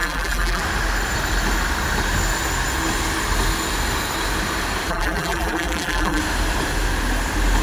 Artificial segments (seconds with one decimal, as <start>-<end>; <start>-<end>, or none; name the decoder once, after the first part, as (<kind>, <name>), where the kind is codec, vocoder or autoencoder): 0.0-0.6 (vocoder, BigVGAN v2); 4.9-6.2